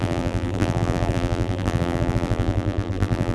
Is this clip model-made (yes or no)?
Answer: yes